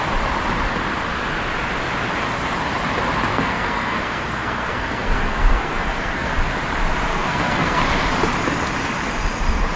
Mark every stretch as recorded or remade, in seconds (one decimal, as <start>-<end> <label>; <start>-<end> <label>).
0.0-3.3 recorded; 3.3-6.3 remade; 6.3-7.1 recorded; 7.1-7.8 remade; 7.8-9.8 recorded